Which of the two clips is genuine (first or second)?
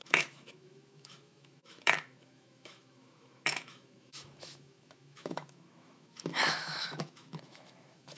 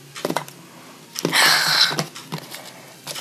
second